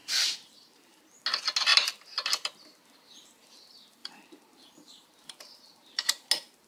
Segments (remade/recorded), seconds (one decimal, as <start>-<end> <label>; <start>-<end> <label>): 0.0-1.0 remade; 1.0-1.7 recorded; 1.7-2.5 remade; 2.5-4.0 recorded; 4.0-6.1 remade; 6.1-6.7 recorded